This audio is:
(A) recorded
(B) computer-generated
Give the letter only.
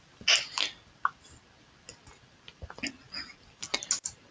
A